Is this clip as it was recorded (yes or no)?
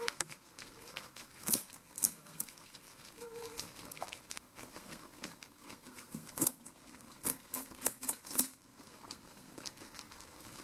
no